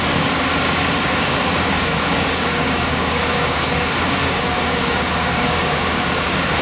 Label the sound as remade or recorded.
remade